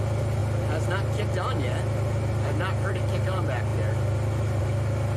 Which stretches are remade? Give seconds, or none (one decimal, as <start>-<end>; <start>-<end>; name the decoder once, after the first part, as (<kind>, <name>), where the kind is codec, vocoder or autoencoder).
none